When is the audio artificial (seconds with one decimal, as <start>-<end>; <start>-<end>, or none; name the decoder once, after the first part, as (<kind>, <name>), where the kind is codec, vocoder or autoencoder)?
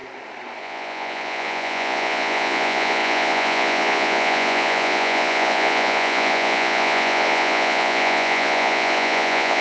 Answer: 0.6-9.6 (vocoder, Vocos)